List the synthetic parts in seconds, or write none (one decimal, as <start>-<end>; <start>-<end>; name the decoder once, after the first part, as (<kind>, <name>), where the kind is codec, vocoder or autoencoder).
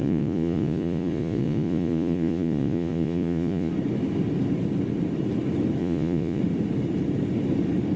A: 0.0-3.7 (vocoder, Vocos); 5.8-6.4